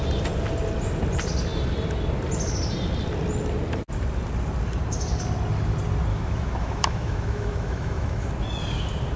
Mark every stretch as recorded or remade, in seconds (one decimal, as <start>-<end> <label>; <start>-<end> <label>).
0.0-6.1 recorded; 6.1-8.3 remade; 8.3-9.2 recorded